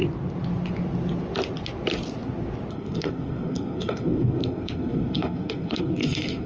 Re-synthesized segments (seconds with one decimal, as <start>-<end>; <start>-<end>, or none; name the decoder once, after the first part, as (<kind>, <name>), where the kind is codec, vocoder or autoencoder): 2.7-6.5 (codec, SNAC)

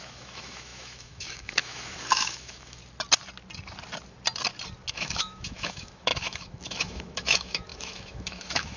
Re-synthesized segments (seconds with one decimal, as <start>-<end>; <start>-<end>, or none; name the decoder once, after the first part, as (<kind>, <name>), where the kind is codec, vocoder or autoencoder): 0.0-2.8 (autoencoder, DAC-VAE); 4.9-8.8

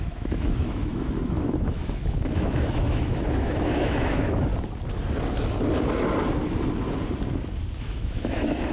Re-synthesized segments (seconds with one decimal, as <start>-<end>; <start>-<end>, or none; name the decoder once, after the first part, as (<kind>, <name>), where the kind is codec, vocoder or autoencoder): 0.0-4.5 (autoencoder, DAC-VAE); 7.8-8.7

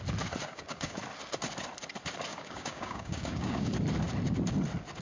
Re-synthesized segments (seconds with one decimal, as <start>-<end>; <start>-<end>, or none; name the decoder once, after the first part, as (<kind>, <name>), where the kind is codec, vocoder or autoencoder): 0.4-1.0 (codec, DAC); 2.3-3.7